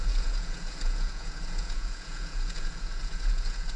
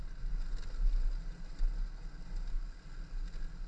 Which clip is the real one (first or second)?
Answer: second